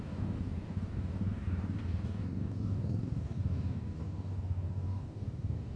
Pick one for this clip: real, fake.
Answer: fake